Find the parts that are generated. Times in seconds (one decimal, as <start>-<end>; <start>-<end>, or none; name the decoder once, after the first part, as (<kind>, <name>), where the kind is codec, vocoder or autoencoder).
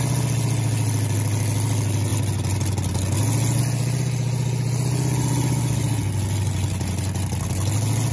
none